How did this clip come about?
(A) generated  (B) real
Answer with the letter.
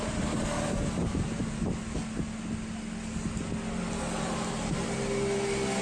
B